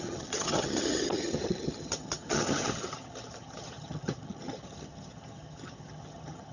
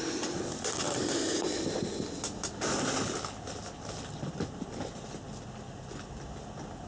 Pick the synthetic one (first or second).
first